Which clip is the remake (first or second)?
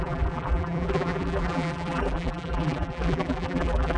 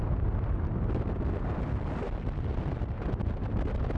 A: first